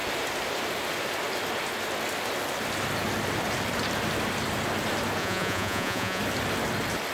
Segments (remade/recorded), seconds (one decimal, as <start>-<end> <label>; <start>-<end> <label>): 0.0-5.2 recorded; 5.2-6.2 remade; 6.2-7.1 recorded